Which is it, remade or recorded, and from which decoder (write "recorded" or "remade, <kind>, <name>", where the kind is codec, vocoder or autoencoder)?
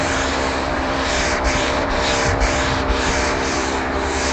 remade, vocoder, BigVGAN v2